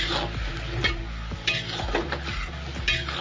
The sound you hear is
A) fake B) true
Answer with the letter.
B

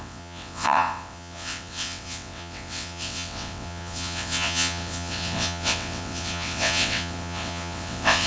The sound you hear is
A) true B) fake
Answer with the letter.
B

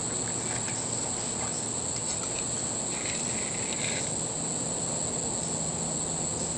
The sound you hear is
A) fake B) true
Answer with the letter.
B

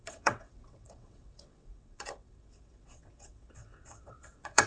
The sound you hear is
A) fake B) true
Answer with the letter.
A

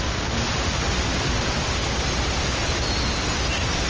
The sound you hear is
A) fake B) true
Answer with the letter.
B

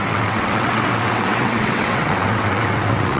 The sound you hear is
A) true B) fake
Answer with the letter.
B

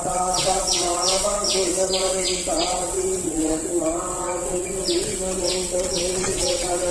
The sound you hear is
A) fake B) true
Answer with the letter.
A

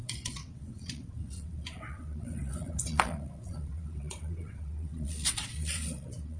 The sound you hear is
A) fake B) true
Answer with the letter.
A